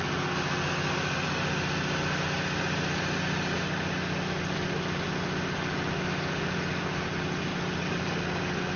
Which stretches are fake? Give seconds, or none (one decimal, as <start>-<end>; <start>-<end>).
7.5-8.2